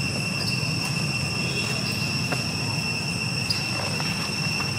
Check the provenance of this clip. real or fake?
real